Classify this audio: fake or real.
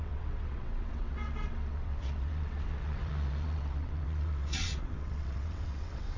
fake